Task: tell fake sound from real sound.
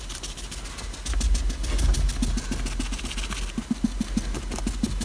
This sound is real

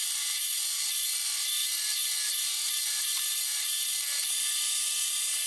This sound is real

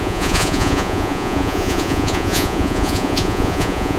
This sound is fake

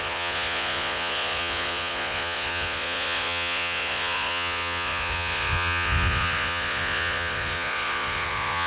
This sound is fake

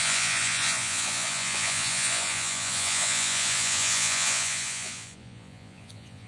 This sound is fake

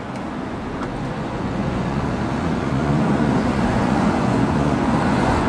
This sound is fake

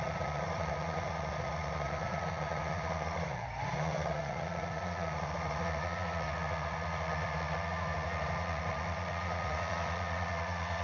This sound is fake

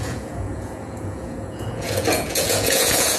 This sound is fake